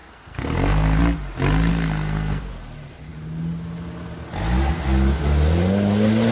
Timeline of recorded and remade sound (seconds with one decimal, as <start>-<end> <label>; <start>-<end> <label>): 0.0-1.0 remade; 1.0-1.7 recorded; 1.7-2.5 remade; 2.5-6.3 recorded